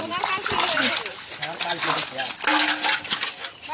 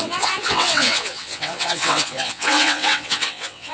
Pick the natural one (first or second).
first